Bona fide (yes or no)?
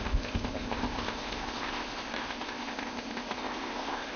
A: no